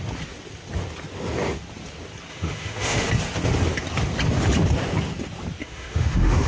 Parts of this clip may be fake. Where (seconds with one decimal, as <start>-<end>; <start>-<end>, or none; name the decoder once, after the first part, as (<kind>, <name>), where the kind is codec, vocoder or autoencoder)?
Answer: 2.3-3.1 (autoencoder, DAC-VAE); 5.6-6.5